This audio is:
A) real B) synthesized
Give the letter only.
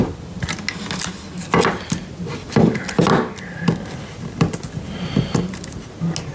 A